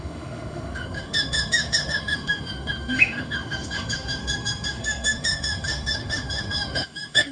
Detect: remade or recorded remade